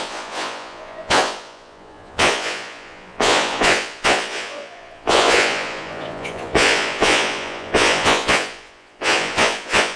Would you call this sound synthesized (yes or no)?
yes